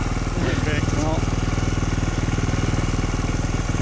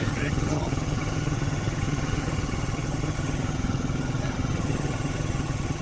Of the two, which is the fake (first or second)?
second